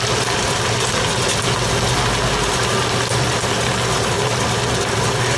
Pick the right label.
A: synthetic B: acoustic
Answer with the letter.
B